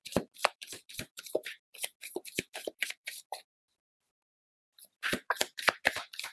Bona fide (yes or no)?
no